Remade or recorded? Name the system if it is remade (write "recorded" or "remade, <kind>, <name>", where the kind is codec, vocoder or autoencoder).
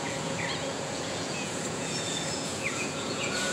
remade, vocoder, Vocos